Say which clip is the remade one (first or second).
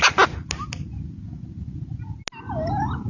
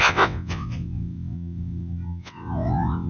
second